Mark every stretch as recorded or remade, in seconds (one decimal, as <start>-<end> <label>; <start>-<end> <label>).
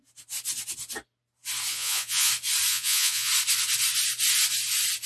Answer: 0.0-1.7 recorded; 1.7-2.3 remade; 2.3-2.7 recorded; 2.7-3.3 remade; 3.3-5.1 recorded